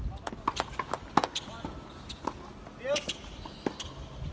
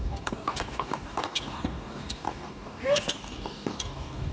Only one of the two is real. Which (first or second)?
first